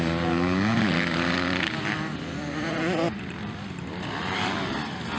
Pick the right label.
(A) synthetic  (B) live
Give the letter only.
B